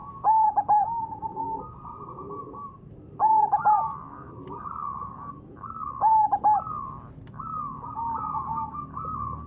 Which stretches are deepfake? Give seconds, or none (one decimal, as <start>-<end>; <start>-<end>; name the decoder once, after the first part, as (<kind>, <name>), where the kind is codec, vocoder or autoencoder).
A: 0.0-4.0 (vocoder, BigVGAN v2)